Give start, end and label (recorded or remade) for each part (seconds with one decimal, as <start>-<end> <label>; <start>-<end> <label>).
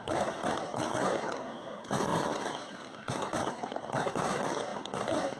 0.0-5.4 remade